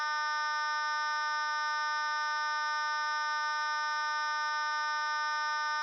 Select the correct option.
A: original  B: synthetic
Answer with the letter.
A